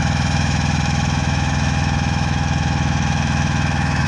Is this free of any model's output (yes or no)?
no